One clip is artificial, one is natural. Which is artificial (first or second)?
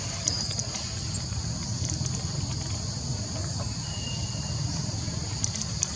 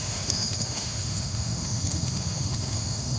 second